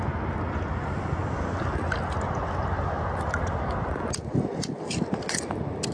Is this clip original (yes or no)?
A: yes